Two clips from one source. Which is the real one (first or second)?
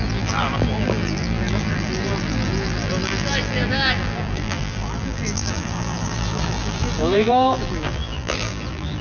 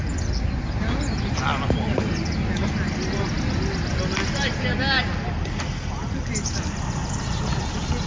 second